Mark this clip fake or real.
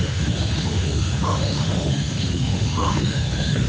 fake